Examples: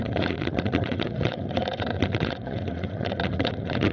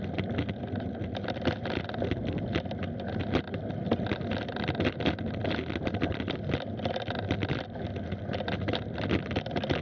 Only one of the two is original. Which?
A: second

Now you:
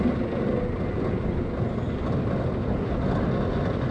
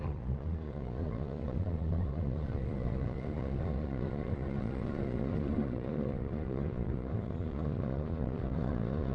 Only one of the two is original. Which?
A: first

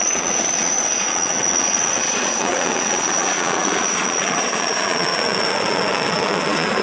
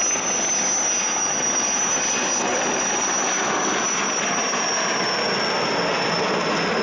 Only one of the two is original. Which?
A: second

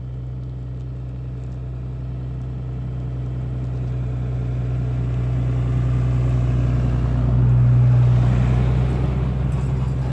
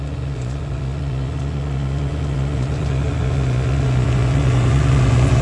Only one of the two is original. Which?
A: first